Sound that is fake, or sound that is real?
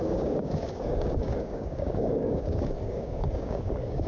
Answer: fake